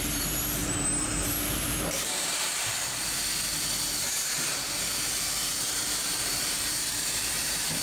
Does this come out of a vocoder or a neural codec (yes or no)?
yes